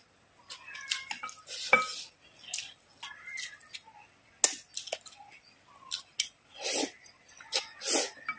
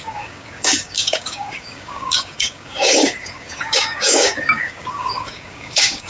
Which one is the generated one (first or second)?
second